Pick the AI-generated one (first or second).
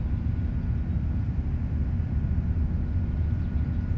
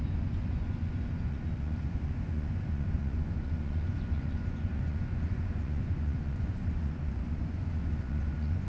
second